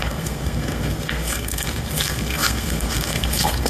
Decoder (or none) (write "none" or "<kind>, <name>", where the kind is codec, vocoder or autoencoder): codec, SNAC